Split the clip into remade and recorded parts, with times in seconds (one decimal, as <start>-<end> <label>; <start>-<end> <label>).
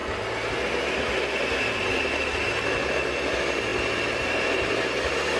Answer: 0.0-5.4 recorded